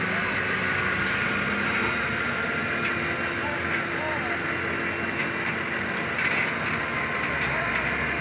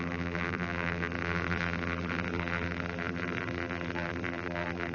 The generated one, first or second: second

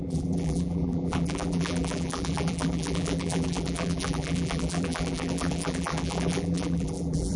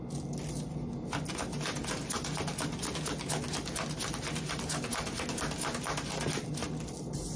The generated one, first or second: first